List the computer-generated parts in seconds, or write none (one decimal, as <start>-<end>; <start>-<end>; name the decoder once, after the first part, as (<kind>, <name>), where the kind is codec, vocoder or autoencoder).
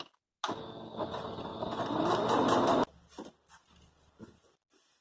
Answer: 1.5-2.7 (vocoder, BigVGAN v2)